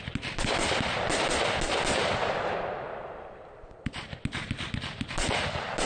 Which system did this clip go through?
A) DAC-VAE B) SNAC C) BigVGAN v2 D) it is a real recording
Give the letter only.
D